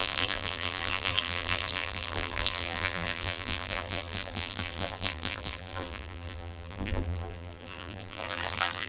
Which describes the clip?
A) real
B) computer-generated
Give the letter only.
B